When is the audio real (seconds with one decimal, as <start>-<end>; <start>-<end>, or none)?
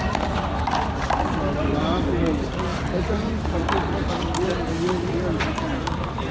0.0-6.3